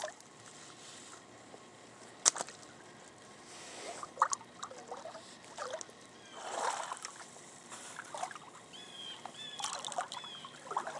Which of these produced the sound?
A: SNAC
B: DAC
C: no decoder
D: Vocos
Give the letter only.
C